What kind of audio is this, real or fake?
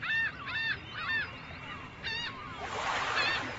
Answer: real